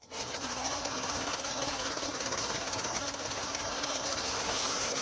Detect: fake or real fake